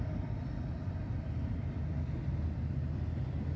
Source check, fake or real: real